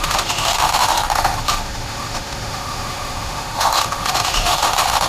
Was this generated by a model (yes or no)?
yes